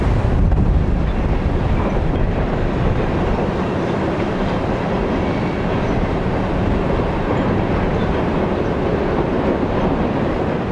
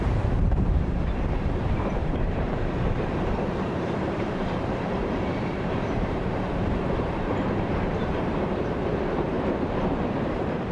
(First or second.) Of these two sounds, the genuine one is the first